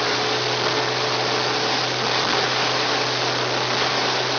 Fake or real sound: real